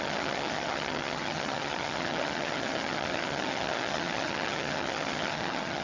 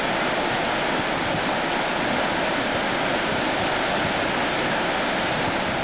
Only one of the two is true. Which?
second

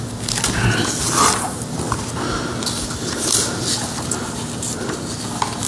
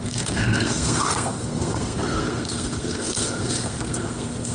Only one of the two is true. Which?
first